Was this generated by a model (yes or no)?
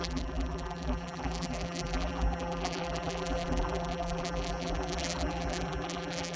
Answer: yes